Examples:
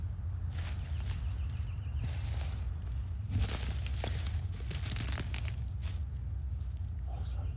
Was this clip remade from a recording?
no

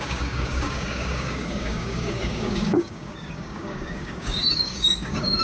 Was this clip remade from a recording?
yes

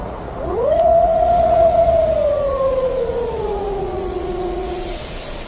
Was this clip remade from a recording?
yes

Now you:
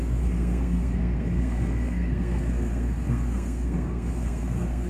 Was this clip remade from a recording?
yes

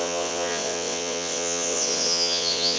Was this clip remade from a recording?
yes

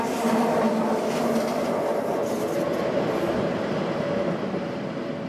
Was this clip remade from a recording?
no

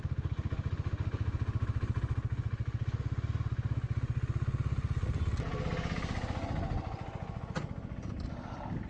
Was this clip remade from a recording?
no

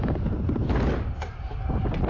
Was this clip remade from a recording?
no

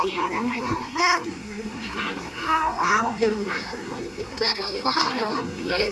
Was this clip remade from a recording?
yes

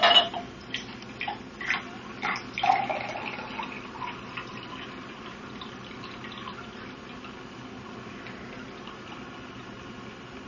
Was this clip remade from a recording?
no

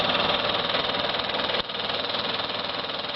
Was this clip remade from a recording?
no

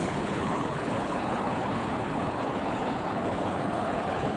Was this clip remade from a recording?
yes